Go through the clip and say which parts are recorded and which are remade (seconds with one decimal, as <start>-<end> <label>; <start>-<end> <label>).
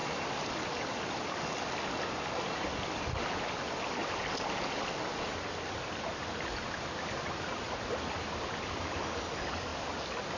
0.0-10.4 recorded